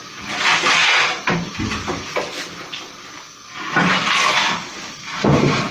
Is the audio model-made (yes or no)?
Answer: no